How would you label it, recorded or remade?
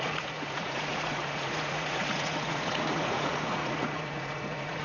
remade